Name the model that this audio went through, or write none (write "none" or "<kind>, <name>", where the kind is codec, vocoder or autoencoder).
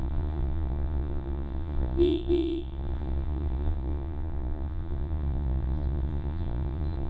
vocoder, Vocos